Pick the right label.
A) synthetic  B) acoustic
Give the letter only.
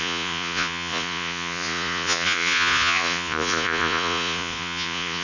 A